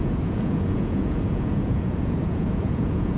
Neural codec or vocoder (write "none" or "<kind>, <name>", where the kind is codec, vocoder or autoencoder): vocoder, Vocos